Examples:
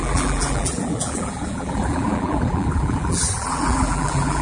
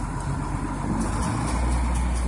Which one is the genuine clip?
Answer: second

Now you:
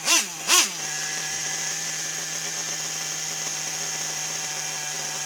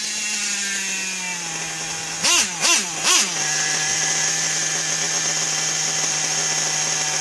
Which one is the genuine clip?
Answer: second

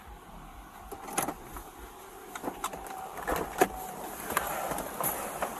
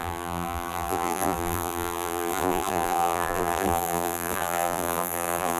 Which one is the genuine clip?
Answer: first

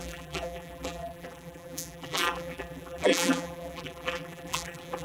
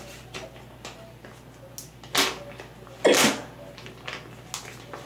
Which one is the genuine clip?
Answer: second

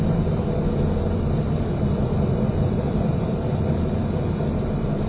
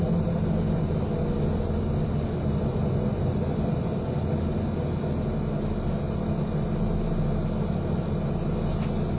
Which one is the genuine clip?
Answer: second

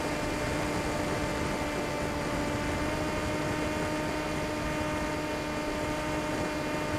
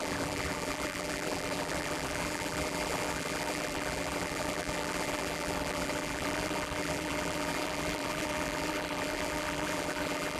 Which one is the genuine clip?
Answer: first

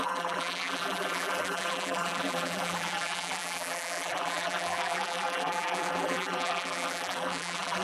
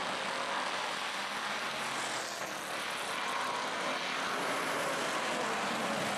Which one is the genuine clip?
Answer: second